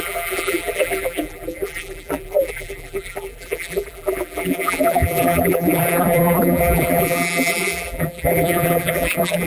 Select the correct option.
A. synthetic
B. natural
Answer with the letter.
A